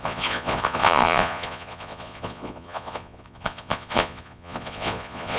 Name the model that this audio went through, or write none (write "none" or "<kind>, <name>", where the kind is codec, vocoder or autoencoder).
vocoder, Vocos